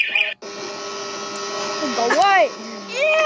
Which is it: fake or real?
real